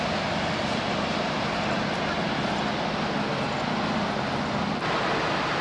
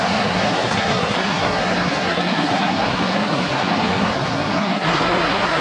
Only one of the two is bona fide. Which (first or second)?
first